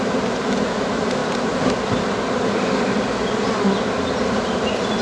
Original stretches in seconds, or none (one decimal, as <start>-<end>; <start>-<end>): 1.2-4.2